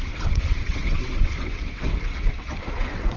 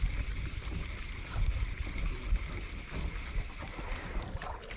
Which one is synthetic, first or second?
first